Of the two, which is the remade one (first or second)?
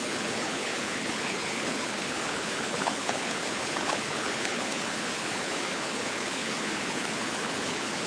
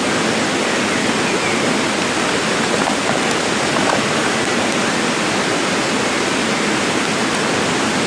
first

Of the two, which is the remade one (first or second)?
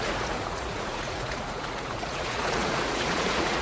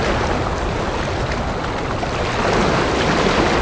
first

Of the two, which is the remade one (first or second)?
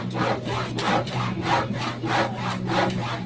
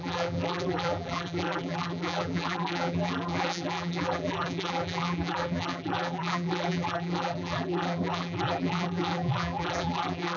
second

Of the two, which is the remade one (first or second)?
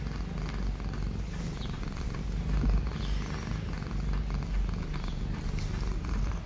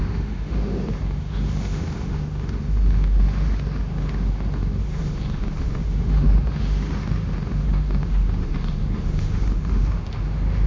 second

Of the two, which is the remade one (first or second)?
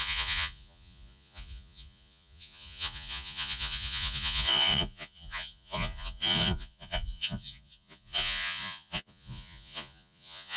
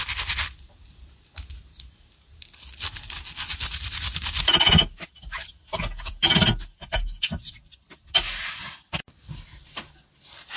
first